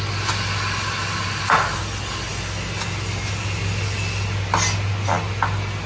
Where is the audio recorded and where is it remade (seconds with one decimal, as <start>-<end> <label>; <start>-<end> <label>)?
0.0-5.9 recorded